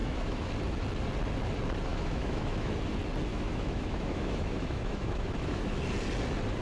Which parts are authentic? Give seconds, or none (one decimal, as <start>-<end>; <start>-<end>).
0.5-1.9; 2.7-3.3; 5.8-6.6